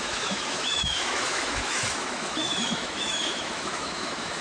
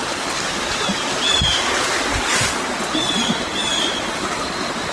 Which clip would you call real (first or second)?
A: second